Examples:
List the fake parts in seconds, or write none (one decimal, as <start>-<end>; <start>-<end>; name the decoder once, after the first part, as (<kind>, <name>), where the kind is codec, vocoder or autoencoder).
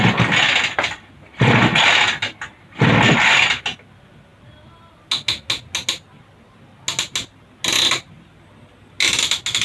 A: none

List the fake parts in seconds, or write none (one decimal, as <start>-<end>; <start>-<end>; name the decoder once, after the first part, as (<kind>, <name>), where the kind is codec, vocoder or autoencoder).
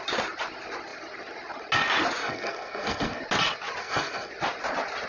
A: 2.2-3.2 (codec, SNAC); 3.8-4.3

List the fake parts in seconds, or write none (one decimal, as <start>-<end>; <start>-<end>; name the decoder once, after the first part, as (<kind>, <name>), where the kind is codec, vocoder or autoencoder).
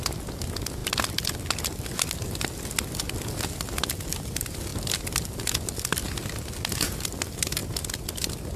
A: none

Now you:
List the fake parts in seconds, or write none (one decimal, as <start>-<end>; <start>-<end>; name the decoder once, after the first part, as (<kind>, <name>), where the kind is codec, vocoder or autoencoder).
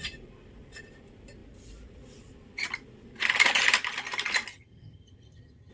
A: 4.5-5.7 (vocoder, HiFi-GAN)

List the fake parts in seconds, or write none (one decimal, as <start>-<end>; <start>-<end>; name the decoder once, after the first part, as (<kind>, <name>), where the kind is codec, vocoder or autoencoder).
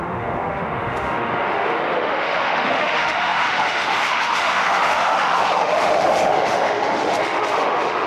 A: 0.0-8.1 (autoencoder, DAC-VAE)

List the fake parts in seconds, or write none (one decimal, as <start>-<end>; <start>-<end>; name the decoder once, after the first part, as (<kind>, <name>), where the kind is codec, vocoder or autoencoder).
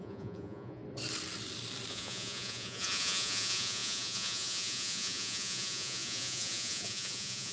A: 0.0-0.8 (vocoder, Vocos); 1.9-7.5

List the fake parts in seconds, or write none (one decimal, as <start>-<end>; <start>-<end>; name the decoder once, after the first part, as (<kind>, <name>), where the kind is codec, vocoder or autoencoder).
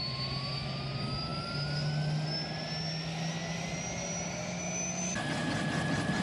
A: none